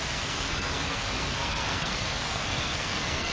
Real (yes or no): no